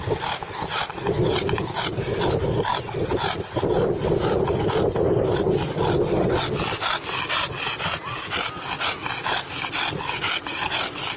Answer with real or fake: real